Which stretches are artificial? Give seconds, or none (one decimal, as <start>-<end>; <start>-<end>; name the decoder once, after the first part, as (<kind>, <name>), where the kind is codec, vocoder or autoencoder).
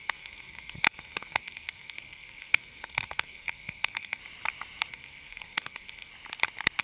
0.0-4.2 (codec, SNAC); 4.9-6.1